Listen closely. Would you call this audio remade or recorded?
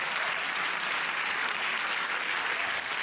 recorded